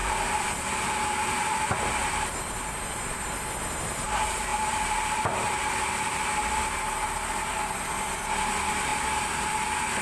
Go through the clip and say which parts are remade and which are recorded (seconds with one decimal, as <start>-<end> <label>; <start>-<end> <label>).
0.0-1.8 remade; 1.8-10.0 recorded